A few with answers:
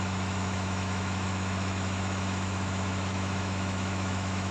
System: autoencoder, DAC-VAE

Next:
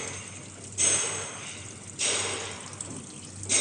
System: none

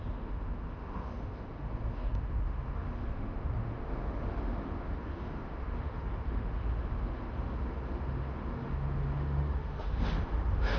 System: autoencoder, DAC-VAE